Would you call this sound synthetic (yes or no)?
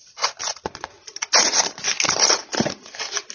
no